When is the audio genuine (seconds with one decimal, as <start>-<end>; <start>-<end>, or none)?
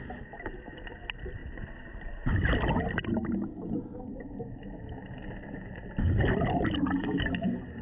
0.0-7.8